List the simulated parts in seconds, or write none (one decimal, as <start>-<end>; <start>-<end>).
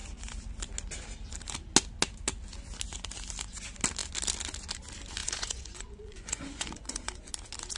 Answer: 5.2-7.3